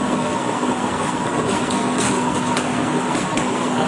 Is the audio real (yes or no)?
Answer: no